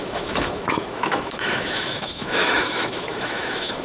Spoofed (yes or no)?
yes